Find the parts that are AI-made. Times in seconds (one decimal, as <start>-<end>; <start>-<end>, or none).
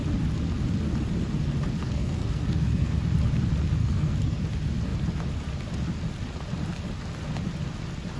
1.8-3.0; 3.8-4.4